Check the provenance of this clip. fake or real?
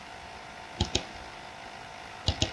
real